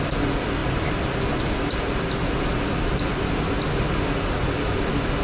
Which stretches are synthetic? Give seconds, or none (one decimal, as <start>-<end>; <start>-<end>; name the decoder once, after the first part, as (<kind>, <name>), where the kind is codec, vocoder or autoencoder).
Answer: 0.6-1.2 (vocoder, BigVGAN v2)